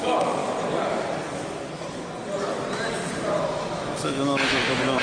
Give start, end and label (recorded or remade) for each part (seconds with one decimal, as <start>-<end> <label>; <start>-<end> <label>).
0.0-0.4 remade; 0.4-3.4 recorded; 3.4-5.0 remade